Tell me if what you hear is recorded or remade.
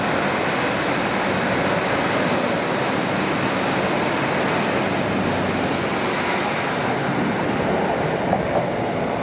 recorded